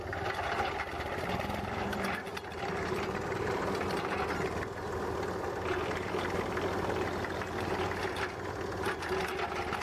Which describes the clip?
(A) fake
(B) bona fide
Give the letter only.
B